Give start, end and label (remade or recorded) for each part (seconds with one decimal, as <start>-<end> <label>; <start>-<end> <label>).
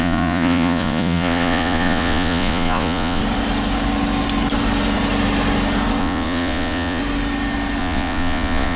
0.0-3.2 remade; 3.2-6.0 recorded; 6.0-7.0 remade; 7.0-7.8 recorded; 7.8-8.8 remade